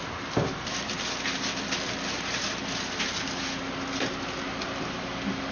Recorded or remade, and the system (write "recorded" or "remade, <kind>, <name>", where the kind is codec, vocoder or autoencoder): recorded